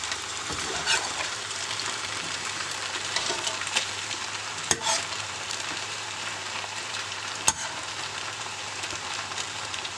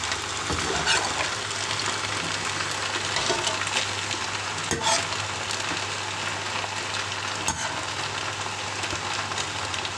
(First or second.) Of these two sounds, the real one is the second